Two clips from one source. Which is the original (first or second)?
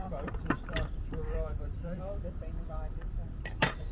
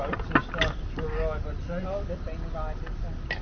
second